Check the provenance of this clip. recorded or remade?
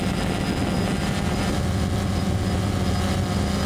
recorded